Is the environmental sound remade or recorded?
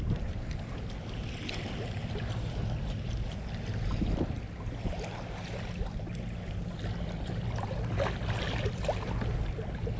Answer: recorded